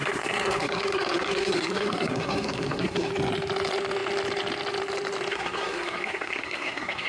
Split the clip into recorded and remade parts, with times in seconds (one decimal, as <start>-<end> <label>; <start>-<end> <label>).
0.0-3.1 remade; 3.1-5.3 recorded; 5.3-7.1 remade